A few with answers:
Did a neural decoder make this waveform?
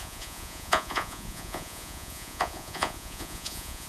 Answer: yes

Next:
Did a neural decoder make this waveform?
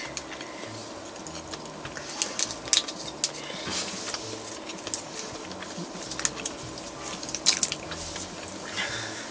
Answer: no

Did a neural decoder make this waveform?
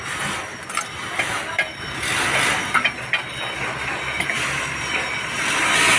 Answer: no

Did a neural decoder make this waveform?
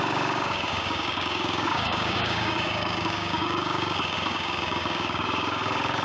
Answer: yes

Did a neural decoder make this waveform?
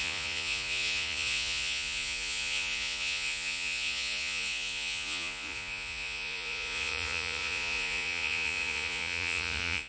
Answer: yes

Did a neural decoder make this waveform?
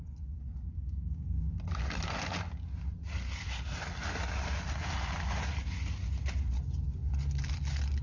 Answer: no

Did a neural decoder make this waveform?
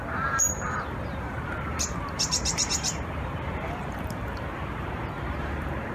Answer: yes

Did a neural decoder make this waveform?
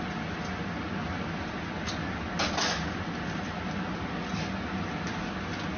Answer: no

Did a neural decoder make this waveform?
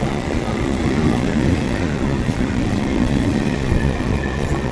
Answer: yes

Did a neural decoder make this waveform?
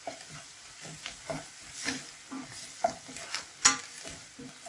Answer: no